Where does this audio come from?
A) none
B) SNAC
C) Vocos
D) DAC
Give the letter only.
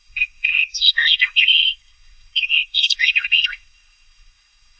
B